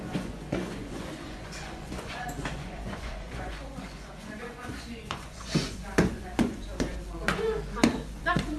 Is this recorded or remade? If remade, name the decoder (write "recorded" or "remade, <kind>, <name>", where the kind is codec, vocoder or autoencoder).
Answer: remade, vocoder, Vocos